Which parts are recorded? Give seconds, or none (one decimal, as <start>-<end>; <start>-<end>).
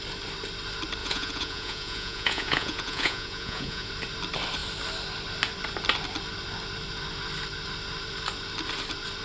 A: 0.0-1.0; 3.9-9.2